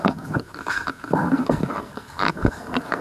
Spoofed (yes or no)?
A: yes